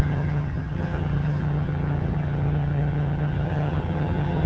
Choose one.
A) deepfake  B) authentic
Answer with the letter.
A